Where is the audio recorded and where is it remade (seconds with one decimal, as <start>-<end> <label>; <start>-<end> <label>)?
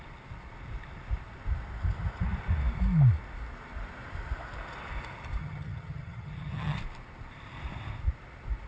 0.0-5.4 recorded; 5.4-6.8 remade; 6.8-8.7 recorded